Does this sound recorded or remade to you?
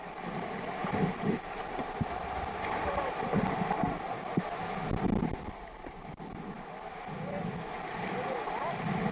recorded